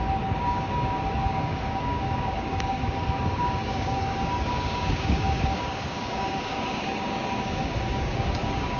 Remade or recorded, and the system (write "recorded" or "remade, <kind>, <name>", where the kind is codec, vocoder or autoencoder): remade, codec, DAC